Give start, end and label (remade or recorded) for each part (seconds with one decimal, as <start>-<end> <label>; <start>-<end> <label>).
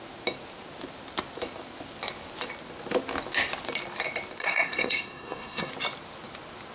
0.0-4.4 recorded; 4.4-5.7 remade; 5.7-6.7 recorded